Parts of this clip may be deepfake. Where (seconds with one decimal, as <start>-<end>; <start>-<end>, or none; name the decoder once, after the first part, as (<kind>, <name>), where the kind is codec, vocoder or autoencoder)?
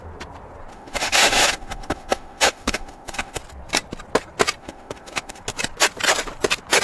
0.7-3.4 (autoencoder, DAC-VAE); 4.6-5.4